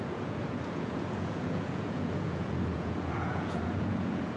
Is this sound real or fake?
fake